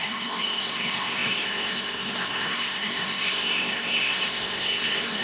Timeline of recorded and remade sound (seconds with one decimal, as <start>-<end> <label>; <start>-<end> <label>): 0.0-5.2 remade